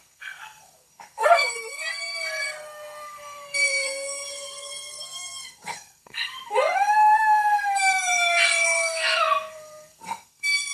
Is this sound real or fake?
fake